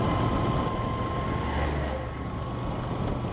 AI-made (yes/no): no